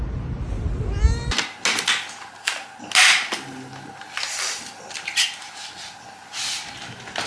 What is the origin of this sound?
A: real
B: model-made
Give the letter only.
A